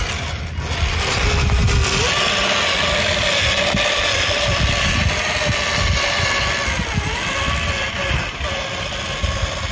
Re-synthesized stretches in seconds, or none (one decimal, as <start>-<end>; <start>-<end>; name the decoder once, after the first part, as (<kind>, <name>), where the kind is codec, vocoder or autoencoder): none